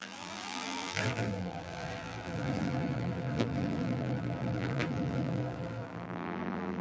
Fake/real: fake